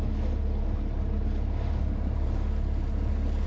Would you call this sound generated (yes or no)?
no